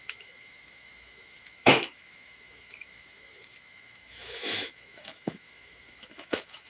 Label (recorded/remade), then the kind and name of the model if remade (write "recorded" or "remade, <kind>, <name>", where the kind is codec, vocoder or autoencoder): remade, autoencoder, DAC-VAE